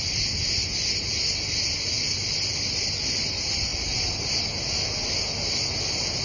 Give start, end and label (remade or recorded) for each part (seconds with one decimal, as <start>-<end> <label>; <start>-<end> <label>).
0.0-6.2 recorded